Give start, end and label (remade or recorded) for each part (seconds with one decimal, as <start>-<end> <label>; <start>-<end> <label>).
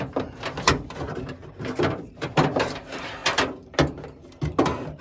0.0-1.1 recorded; 1.1-2.7 remade; 2.7-5.0 recorded